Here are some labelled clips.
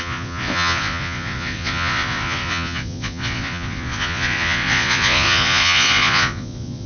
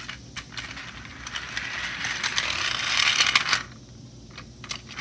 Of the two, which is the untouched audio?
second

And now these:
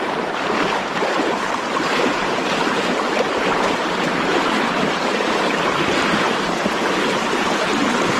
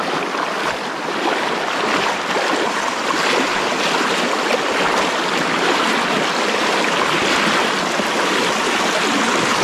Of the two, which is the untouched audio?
second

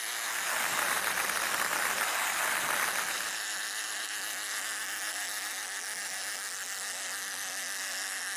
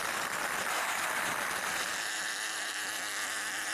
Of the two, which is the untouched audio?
first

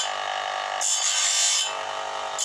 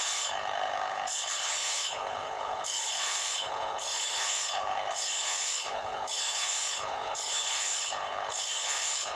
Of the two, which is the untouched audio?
first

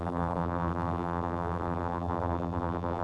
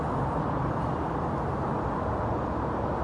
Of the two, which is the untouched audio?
second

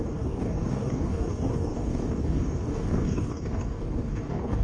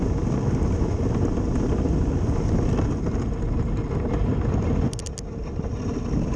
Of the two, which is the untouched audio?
second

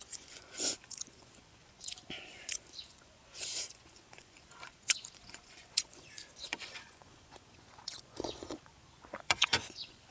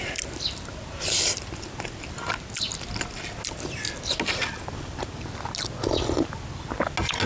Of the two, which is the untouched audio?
second